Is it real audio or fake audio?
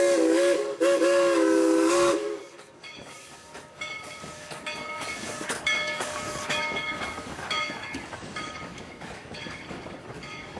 fake